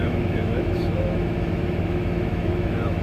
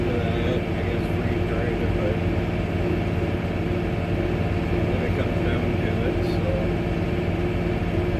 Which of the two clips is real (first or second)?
second